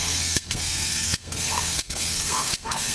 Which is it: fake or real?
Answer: fake